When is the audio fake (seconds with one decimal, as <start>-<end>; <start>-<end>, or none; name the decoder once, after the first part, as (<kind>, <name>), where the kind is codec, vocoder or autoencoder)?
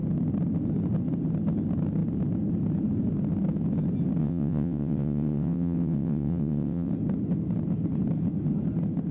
4.2-6.9 (vocoder, WaveNeXt)